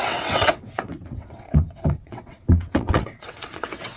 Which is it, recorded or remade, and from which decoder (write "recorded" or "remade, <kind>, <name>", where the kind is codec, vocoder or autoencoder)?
remade, vocoder, WaveNeXt